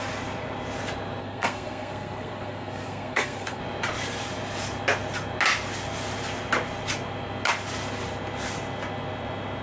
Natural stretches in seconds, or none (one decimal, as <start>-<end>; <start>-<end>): 0.0-1.2; 3.6-9.6